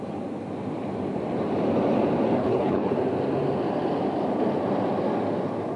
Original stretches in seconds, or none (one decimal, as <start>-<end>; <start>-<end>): 0.0-2.4; 2.9-5.8